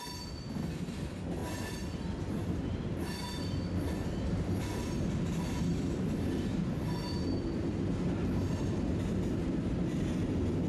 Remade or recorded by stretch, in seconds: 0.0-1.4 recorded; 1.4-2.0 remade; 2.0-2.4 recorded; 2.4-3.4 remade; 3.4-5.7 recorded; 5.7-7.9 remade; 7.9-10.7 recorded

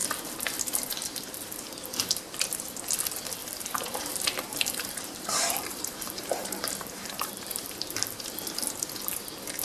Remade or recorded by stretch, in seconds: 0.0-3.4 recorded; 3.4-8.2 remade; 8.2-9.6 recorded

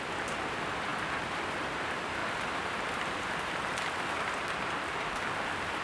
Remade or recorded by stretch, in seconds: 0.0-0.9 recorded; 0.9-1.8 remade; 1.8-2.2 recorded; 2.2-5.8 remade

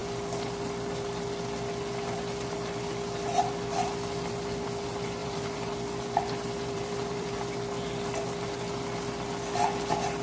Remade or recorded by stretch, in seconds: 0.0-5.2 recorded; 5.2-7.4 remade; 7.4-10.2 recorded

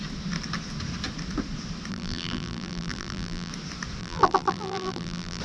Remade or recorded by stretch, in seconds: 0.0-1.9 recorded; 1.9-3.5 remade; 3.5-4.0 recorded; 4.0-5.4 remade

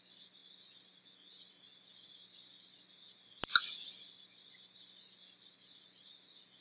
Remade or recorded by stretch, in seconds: 0.0-6.6 recorded

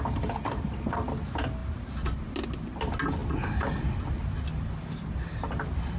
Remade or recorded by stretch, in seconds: 0.0-6.0 recorded